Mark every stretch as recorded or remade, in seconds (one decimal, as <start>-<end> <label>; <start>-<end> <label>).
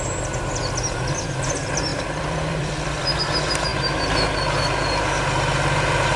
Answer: 0.0-1.9 recorded; 1.9-3.2 remade; 3.2-6.2 recorded